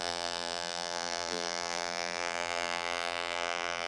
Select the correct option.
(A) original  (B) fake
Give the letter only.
B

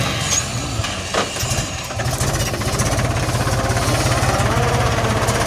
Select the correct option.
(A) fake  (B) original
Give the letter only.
B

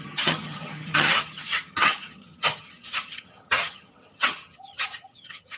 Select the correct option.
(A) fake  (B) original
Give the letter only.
A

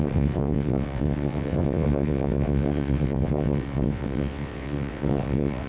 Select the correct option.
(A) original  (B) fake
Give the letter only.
B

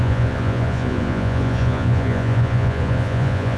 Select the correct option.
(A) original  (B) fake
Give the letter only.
B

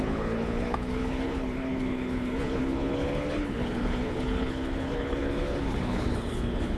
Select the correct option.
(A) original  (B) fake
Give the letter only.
B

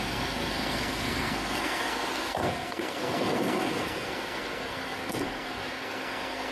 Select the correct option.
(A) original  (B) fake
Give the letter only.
B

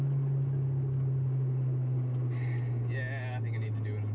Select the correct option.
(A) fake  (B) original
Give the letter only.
B